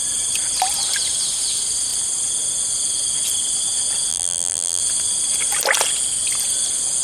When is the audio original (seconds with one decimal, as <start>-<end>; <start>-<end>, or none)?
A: 0.0-4.1; 4.8-7.0